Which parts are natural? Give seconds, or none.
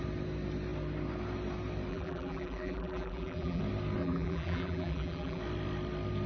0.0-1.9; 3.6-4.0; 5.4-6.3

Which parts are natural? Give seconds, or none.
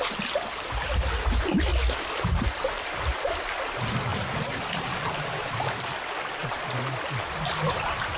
0.0-1.7; 2.6-4.1; 5.5-8.2